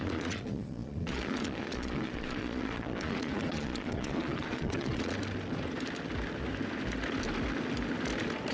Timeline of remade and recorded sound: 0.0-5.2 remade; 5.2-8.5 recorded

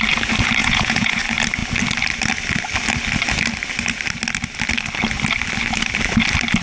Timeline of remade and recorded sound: 0.0-0.6 recorded; 0.6-1.2 remade; 1.2-6.6 recorded

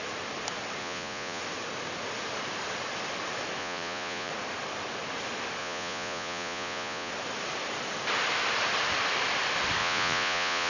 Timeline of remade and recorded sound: 0.0-0.8 recorded; 0.8-1.4 remade; 1.4-3.6 recorded; 3.6-4.3 remade; 4.3-5.6 recorded; 5.6-7.1 remade; 7.1-9.8 recorded; 9.8-10.7 remade

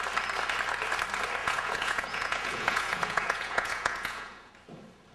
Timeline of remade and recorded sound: 0.0-1.4 recorded; 1.4-4.5 remade; 4.5-5.1 recorded

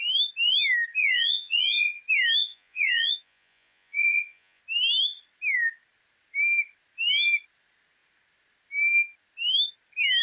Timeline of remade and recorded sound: 0.0-1.0 recorded; 1.0-2.0 remade; 2.0-2.4 recorded; 2.4-4.6 remade; 4.6-10.2 recorded

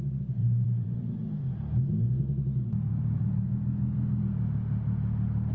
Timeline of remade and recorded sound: 0.0-0.4 recorded; 0.4-1.0 remade; 1.0-2.9 recorded; 2.9-4.2 remade; 4.2-5.5 recorded

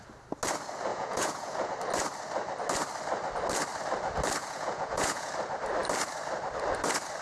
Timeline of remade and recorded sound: 0.0-0.9 recorded; 0.9-1.7 remade; 1.7-4.4 recorded; 4.4-5.3 remade; 5.3-7.2 recorded